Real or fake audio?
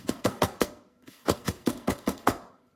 fake